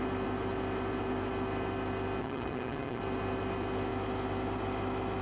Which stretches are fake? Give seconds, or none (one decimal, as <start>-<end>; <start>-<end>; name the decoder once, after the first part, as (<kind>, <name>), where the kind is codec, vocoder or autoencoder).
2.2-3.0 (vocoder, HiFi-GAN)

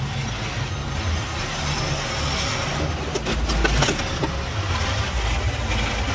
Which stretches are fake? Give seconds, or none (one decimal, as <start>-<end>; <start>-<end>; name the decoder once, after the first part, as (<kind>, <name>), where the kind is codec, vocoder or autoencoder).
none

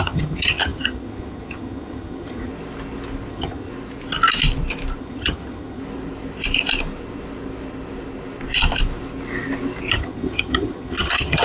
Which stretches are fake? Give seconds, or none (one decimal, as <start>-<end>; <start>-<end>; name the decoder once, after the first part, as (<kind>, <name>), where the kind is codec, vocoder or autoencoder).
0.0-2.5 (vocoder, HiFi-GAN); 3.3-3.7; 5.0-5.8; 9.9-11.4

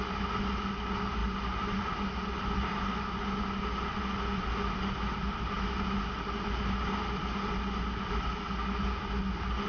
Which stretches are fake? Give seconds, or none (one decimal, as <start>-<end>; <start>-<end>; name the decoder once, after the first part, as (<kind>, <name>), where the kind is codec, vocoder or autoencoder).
none

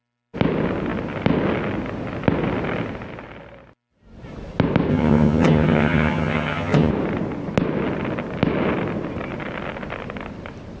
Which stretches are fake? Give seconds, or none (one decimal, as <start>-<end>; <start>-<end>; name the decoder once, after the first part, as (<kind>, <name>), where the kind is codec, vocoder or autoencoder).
4.9-6.9 (vocoder, HiFi-GAN)